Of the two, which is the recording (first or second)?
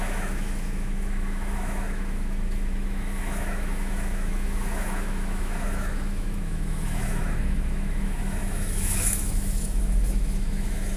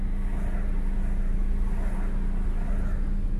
second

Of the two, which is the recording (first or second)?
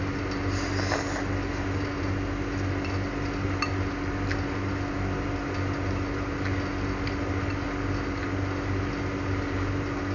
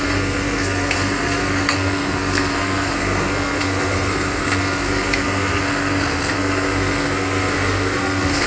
first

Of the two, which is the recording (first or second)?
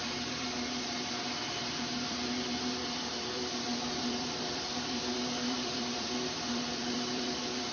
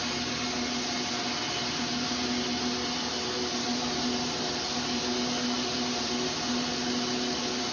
second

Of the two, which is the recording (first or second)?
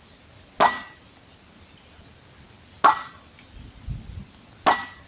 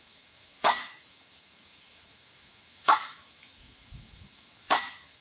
first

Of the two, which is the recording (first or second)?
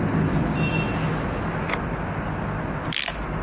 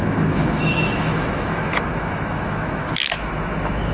first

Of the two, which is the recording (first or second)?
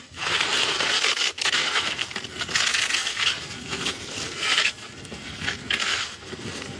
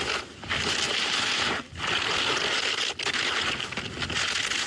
second